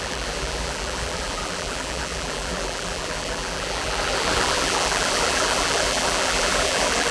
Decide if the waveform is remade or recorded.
remade